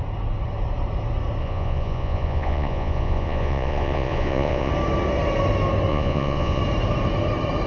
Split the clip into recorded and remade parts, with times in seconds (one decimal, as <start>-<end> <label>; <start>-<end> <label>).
0.0-1.4 recorded; 1.4-4.7 remade; 4.7-5.9 recorded; 5.9-6.6 remade; 6.6-7.7 recorded